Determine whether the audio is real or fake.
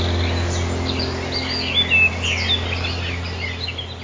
real